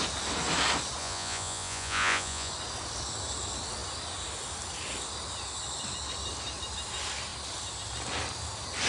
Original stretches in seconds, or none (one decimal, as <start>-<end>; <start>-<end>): 0.0-1.0; 2.5-8.9